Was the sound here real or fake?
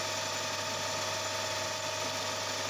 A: real